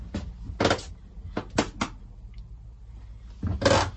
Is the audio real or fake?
real